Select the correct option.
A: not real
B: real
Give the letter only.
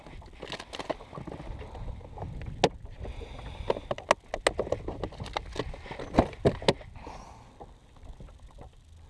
B